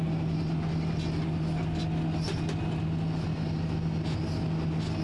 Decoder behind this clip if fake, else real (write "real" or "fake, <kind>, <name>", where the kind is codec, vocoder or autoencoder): real